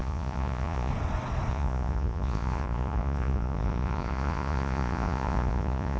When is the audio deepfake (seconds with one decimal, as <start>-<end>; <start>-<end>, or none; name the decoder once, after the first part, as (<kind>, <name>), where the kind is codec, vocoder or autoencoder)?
0.0-0.9 (vocoder, Vocos); 1.5-6.0